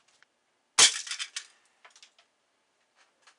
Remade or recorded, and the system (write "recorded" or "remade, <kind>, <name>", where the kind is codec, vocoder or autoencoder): recorded